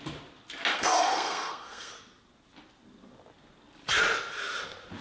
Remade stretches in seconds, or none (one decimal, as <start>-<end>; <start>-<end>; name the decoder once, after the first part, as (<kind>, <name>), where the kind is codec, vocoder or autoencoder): 0.7-1.9 (codec, SNAC)